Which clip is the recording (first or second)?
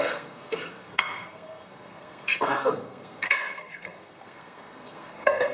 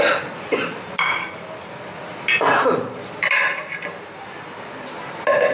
second